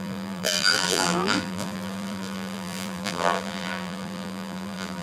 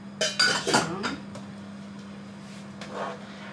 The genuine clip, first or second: second